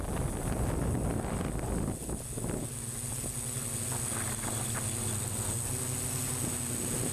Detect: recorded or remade recorded